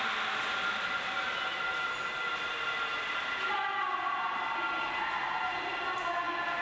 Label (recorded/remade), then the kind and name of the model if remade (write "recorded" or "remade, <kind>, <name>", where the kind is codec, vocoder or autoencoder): recorded